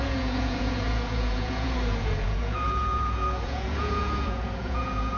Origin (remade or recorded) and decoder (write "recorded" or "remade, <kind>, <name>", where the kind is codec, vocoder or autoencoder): remade, vocoder, Vocos